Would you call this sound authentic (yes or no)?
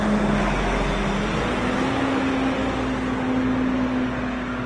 yes